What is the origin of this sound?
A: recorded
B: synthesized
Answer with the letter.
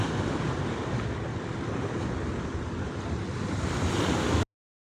A